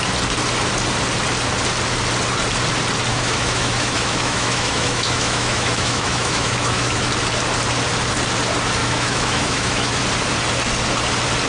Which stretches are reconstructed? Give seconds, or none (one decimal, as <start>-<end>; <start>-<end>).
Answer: 3.1-7.1; 8.8-10.0